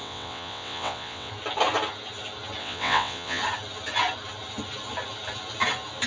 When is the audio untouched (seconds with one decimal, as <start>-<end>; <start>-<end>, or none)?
1.3-2.6; 3.4-6.1